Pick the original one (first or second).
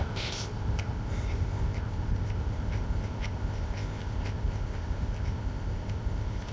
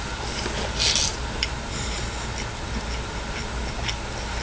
second